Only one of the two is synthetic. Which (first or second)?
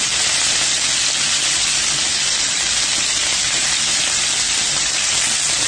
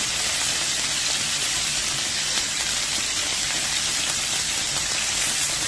second